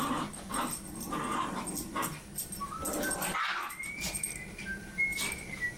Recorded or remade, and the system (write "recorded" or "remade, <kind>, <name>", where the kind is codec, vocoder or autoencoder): recorded